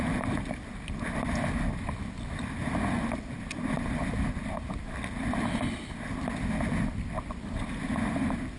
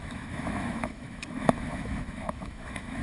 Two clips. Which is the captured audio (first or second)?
first